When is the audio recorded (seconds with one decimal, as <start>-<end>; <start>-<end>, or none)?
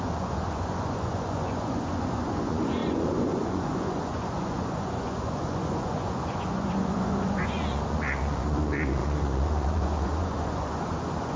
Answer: none